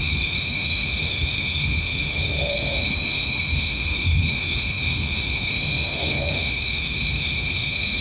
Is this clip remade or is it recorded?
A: remade